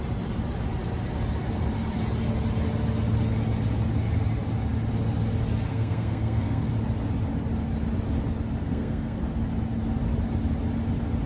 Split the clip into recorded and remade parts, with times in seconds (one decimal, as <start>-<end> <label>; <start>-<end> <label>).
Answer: 0.0-5.7 recorded; 5.7-6.7 remade; 6.7-8.6 recorded; 8.6-9.2 remade; 9.2-11.3 recorded